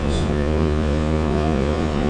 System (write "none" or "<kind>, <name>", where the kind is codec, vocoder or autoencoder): vocoder, Vocos